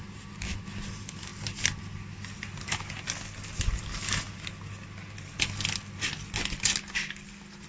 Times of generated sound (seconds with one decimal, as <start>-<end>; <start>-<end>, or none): none